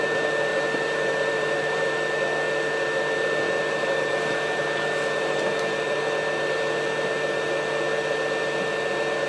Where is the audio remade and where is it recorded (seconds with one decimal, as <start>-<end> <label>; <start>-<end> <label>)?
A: 0.0-0.5 recorded; 0.5-1.8 remade; 1.8-9.3 recorded